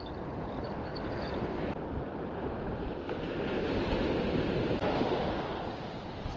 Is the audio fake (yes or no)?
no